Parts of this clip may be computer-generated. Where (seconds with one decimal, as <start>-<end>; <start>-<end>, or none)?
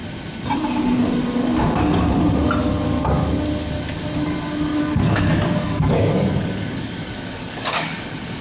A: 4.8-8.4